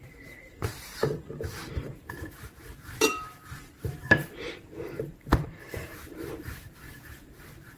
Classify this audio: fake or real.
fake